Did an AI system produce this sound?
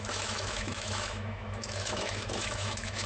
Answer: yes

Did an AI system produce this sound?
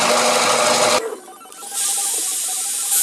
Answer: no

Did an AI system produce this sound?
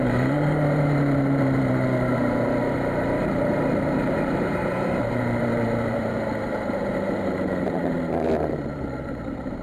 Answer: yes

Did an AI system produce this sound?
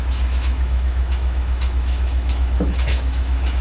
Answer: yes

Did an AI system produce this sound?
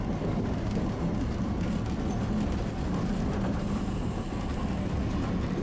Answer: no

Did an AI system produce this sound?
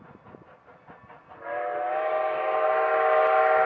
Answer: no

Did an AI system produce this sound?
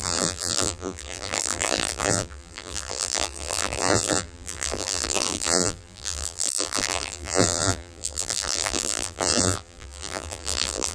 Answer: yes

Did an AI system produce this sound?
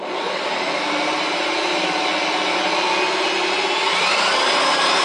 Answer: no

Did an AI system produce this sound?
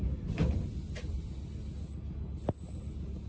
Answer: no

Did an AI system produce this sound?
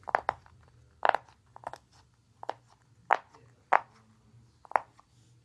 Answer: no